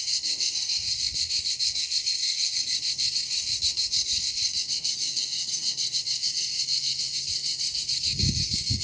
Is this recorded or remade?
remade